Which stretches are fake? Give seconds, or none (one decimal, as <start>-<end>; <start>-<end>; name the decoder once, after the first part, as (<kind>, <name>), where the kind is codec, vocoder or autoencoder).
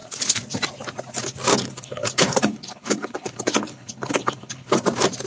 1.5-4.7 (codec, HILCodec)